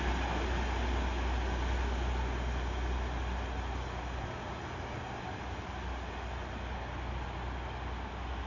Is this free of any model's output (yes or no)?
yes